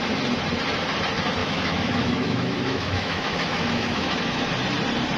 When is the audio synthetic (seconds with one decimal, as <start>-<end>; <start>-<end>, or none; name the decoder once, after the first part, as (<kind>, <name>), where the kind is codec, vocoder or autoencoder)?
1.4-4.5 (autoencoder, DAC-VAE)